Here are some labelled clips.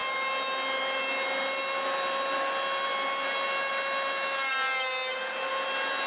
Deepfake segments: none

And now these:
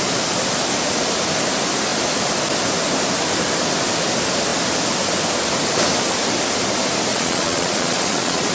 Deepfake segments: 7.1-8.5 (vocoder, Vocos)

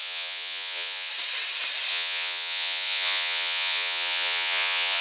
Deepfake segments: 0.0-1.1 (vocoder, Vocos); 1.9-5.0

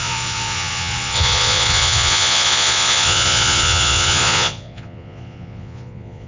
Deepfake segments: 0.0-6.3 (vocoder, Vocos)

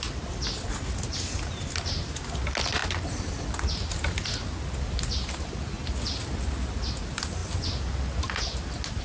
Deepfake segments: none

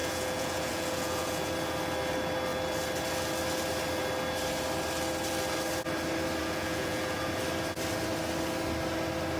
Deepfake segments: 0.0-1.5 (vocoder, Vocos); 6.4-7.3

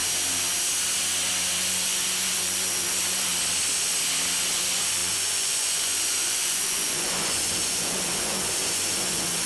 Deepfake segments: 1.6-3.3 (vocoder, Vocos); 4.5-9.5

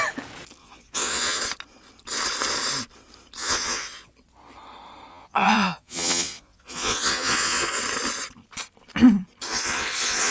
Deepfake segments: 0.6-1.4 (vocoder, Vocos); 3.4-4.1; 5.1-7.8; 9.5-10.3